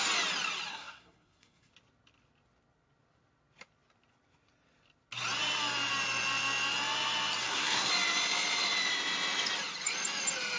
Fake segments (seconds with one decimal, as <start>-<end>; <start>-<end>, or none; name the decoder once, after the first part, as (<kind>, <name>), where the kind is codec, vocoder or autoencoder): 0.7-1.7 (codec, SNAC); 7.4-7.9